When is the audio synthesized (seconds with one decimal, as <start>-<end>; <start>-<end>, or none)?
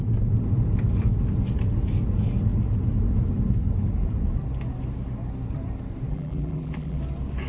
6.1-7.0